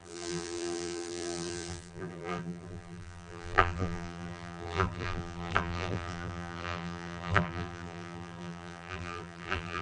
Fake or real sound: fake